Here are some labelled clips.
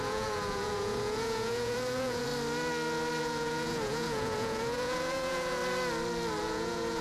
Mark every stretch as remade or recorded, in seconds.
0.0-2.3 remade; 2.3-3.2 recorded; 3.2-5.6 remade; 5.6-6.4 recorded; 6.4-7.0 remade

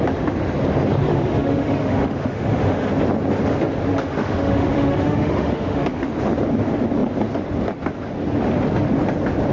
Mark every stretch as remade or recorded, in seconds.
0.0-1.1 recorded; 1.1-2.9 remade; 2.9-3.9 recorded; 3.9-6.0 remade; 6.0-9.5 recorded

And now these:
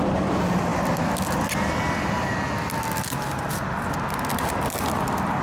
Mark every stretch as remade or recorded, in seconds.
0.0-5.4 recorded

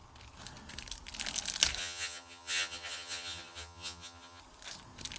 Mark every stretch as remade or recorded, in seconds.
0.0-1.8 recorded; 1.8-4.4 remade; 4.4-5.2 recorded

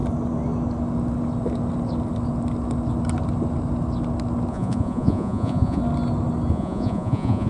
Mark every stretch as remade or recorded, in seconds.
0.0-4.5 recorded; 4.5-5.8 remade; 5.8-6.5 recorded; 6.5-7.5 remade

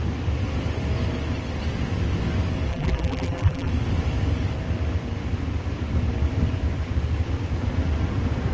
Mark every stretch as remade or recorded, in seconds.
0.0-2.7 recorded; 2.7-3.7 remade; 3.7-8.5 recorded

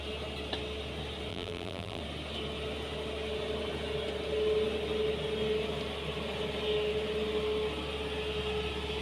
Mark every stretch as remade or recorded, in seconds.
0.0-1.3 recorded; 1.3-2.0 remade; 2.0-9.0 recorded